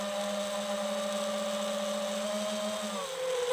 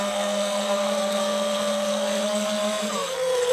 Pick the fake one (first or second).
second